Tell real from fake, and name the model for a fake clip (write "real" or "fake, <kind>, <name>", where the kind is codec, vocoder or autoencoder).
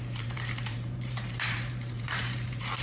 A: fake, vocoder, BigVGAN v2